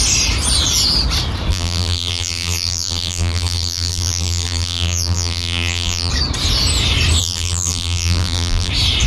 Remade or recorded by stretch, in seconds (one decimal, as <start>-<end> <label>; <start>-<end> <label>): 0.0-1.5 recorded; 1.5-6.1 remade; 6.1-7.2 recorded; 7.2-8.7 remade; 8.7-9.1 recorded